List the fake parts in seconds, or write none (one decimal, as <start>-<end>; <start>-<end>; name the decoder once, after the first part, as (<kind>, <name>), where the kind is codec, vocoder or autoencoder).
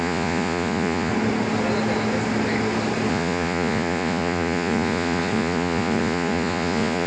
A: 0.0-1.1 (vocoder, Vocos); 3.1-7.1